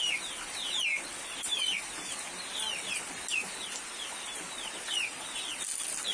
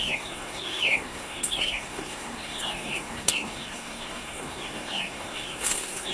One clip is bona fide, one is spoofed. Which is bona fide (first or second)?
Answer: first